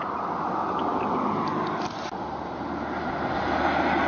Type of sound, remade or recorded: recorded